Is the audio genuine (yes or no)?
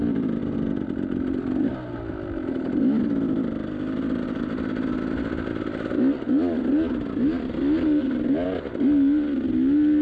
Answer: yes